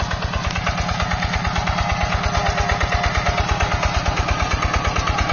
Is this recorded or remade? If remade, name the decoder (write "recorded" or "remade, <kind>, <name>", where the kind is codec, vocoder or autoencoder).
recorded